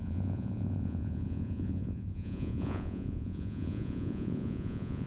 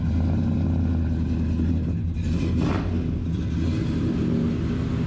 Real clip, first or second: second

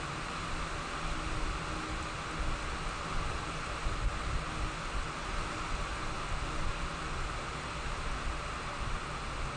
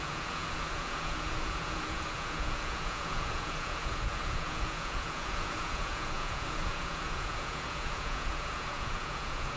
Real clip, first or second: first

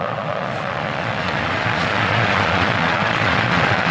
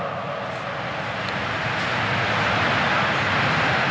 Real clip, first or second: second